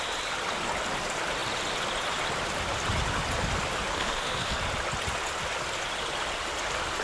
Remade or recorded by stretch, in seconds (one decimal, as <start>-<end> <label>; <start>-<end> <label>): 0.0-3.9 recorded; 3.9-4.6 remade; 4.6-7.0 recorded